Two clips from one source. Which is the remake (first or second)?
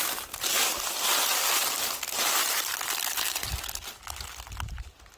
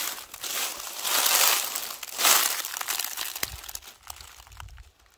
first